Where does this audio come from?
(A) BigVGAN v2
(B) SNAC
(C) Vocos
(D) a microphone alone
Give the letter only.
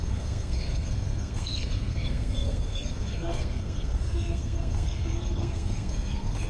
B